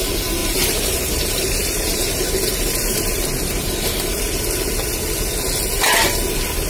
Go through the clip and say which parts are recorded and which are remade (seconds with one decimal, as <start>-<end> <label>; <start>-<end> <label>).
0.0-0.4 recorded; 0.4-4.4 remade; 4.4-6.7 recorded